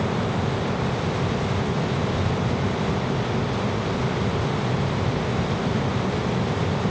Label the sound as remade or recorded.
recorded